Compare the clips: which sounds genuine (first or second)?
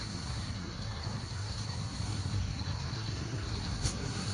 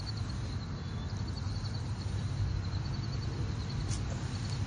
second